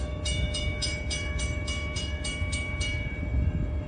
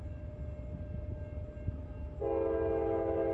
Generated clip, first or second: first